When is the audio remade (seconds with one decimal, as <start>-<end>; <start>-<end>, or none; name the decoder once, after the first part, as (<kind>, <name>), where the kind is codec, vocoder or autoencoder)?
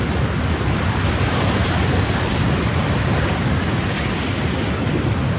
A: none